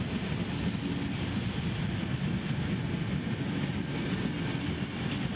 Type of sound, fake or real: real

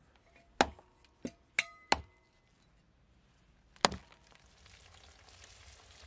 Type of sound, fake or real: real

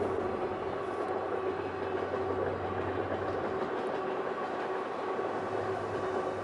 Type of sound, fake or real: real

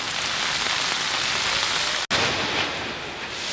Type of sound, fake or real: real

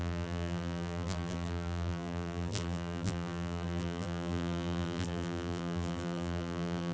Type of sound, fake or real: fake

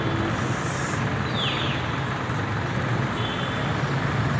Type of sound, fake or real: real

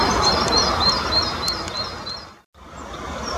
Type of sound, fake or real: real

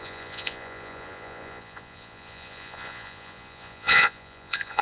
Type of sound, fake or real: fake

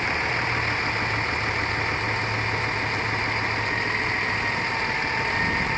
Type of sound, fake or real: real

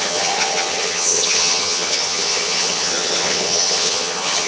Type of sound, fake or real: fake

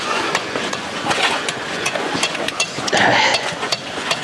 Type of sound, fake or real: fake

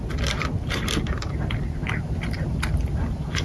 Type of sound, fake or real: real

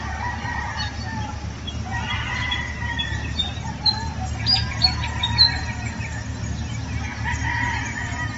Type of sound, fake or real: real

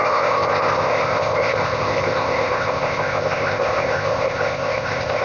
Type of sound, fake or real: fake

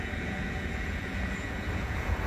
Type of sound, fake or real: fake